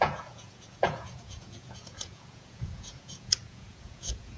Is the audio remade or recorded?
remade